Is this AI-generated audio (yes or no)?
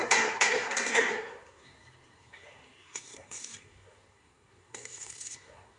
yes